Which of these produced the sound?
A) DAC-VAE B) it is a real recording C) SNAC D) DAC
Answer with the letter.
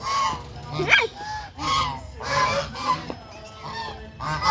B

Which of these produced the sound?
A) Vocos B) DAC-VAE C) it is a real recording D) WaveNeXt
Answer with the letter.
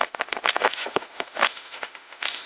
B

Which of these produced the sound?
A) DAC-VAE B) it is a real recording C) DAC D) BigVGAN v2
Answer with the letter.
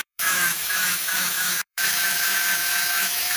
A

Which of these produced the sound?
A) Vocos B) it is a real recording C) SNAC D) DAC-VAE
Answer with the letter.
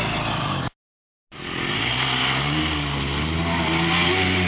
B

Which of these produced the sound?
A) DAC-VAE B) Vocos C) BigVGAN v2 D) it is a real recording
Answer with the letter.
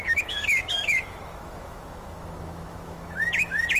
A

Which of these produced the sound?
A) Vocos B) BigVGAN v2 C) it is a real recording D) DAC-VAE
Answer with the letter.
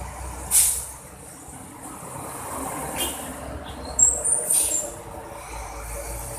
C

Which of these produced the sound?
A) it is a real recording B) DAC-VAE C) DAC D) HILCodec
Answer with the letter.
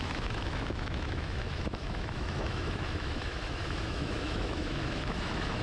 B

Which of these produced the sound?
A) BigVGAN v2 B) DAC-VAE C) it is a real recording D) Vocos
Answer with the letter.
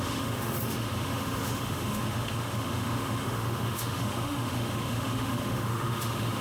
B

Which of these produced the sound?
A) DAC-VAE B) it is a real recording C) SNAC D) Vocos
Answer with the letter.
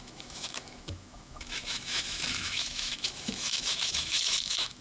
A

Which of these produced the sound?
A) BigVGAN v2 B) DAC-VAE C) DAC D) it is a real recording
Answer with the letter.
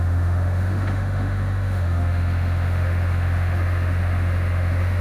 B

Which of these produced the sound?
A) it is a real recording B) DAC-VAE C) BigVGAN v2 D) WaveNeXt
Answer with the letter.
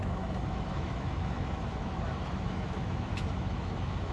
B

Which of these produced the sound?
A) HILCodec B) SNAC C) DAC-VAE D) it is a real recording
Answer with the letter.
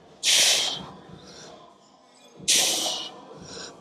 D